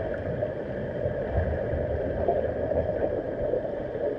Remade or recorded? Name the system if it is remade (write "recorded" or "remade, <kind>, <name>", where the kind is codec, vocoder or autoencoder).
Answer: remade, vocoder, BigVGAN v2